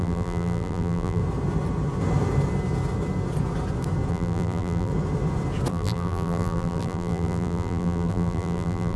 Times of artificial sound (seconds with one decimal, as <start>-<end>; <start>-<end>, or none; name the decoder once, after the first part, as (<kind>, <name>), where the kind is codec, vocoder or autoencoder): 0.0-1.2 (vocoder, BigVGAN v2); 4.1-4.9; 5.7-9.0